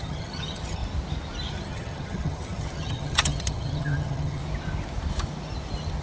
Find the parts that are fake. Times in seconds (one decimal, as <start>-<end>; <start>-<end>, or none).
0.0-0.8; 1.5-4.4